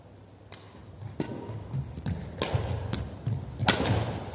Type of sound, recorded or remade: recorded